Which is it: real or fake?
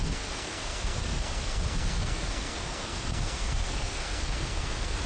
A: fake